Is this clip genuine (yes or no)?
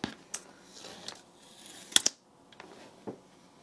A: yes